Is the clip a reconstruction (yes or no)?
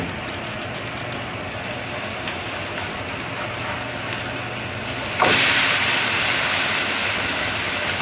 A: no